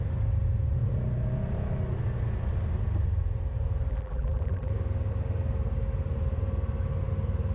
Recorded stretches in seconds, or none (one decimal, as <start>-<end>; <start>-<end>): 0.0-3.9; 4.7-7.5